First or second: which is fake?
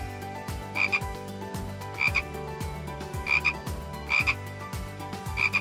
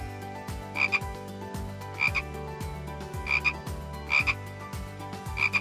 first